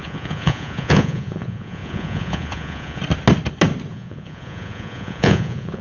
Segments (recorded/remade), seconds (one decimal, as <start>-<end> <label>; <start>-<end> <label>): 0.0-3.0 remade; 3.0-3.9 recorded; 3.9-5.8 remade